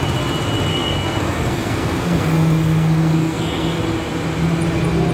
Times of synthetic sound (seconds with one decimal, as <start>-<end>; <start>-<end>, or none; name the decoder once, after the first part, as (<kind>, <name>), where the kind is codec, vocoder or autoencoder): 0.7-3.8 (codec, SNAC)